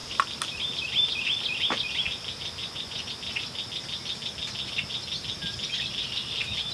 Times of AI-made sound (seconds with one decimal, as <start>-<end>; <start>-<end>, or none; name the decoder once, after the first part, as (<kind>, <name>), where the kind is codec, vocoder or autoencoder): 2.6-3.1 (vocoder, Vocos)